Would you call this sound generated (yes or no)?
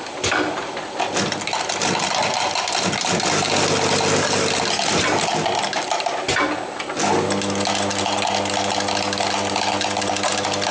no